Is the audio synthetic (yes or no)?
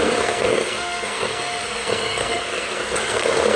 yes